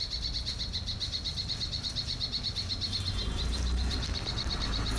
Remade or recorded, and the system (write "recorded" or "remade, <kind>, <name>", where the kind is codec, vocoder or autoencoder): recorded